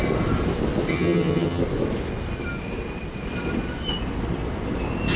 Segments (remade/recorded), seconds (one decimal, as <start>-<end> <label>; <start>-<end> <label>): 0.0-0.9 recorded; 0.9-1.6 remade; 1.6-5.2 recorded